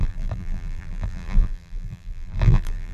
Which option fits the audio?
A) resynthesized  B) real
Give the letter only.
A